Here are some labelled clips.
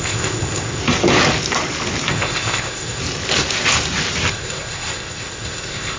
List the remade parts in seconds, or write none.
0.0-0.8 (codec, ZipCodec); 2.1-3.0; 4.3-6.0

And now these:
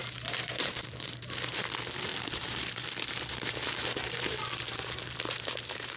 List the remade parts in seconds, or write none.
0.0-1.6 (vocoder, BigVGAN v2); 2.1-6.0

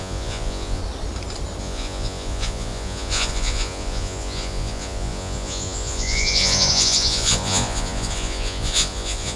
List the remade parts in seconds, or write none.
0.0-0.8 (vocoder, Vocos); 1.6-9.4

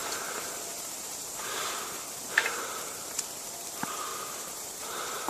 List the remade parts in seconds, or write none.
0.0-3.2 (vocoder, BigVGAN v2); 4.1-5.3

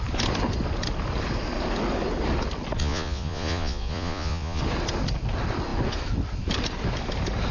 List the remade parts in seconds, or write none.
2.8-4.6 (vocoder, Vocos)

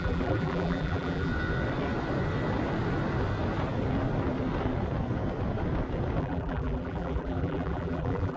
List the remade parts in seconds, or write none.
0.0-1.3 (vocoder, BigVGAN v2); 6.2-8.4

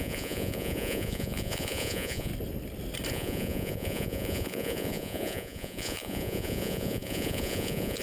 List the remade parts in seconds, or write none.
0.0-2.3 (vocoder, Vocos); 3.1-8.0